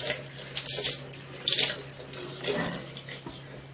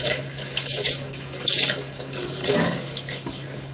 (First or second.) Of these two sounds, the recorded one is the first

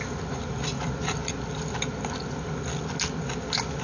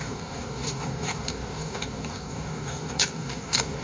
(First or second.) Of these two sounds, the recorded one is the first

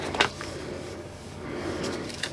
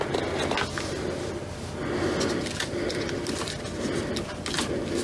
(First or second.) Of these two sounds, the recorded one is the second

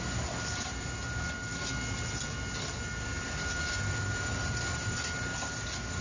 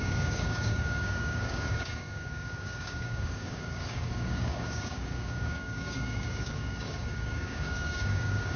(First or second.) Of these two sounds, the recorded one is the first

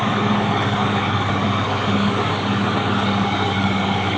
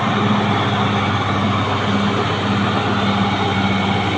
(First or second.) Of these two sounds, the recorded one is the second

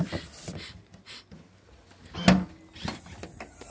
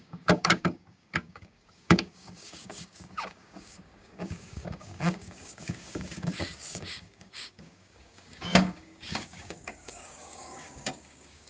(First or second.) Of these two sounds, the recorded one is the first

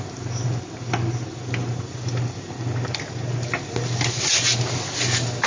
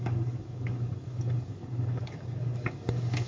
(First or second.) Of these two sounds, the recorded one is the first